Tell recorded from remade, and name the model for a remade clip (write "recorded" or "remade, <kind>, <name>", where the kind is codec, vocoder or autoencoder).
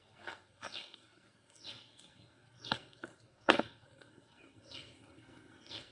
remade, codec, SNAC